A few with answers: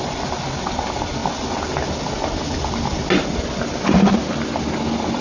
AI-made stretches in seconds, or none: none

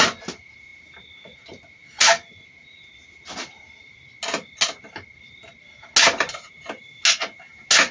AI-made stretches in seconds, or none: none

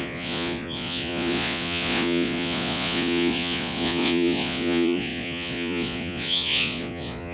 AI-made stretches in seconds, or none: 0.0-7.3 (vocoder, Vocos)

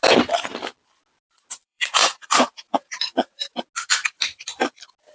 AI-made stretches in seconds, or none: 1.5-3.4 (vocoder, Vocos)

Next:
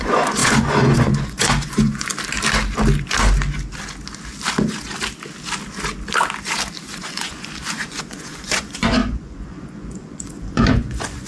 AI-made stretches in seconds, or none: 0.0-2.1 (vocoder, Vocos); 7.0-11.3

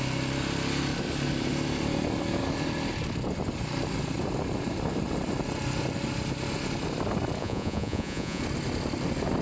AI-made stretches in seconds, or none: 7.4-8.4 (vocoder, Vocos)